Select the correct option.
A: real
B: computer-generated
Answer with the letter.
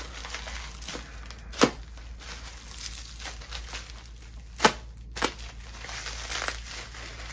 A